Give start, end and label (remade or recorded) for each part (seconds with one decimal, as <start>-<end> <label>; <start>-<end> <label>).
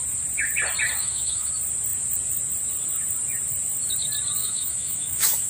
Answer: 0.0-1.0 recorded; 1.0-1.5 remade; 1.5-4.4 recorded; 4.4-5.5 remade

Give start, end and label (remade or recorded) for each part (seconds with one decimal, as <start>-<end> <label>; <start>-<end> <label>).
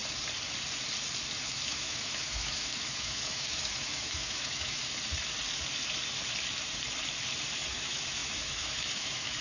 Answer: 0.0-1.4 recorded; 1.4-4.8 remade; 4.8-7.7 recorded; 7.7-9.4 remade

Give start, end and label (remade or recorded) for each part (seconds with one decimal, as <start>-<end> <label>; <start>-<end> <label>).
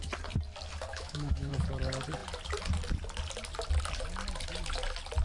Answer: 0.0-0.9 recorded; 0.9-1.5 remade; 1.5-5.2 recorded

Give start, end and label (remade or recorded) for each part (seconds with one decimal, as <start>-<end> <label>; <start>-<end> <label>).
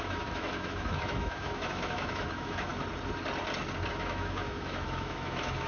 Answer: 0.0-2.7 remade; 2.7-3.9 recorded; 3.9-5.7 remade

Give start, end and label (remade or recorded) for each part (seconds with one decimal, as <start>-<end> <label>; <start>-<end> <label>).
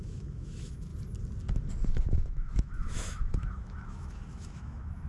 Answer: 0.0-0.9 remade; 0.9-1.9 recorded; 1.9-5.1 remade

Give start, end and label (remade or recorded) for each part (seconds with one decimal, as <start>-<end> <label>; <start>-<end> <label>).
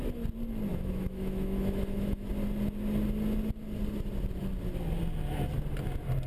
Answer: 0.0-0.7 recorded; 0.7-2.3 remade; 2.3-6.3 recorded